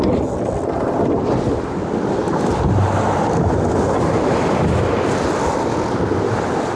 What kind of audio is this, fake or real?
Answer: real